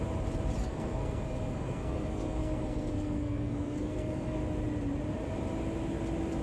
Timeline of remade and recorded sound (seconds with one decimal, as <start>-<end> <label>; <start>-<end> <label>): 0.0-0.6 recorded; 0.6-4.4 remade; 4.4-6.4 recorded